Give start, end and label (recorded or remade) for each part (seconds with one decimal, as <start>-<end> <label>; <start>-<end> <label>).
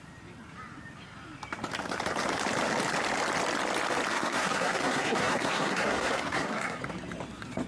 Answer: 0.0-4.1 recorded; 4.1-6.8 remade; 6.8-7.7 recorded